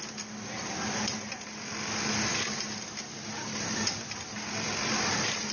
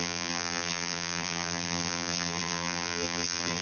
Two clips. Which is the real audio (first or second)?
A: first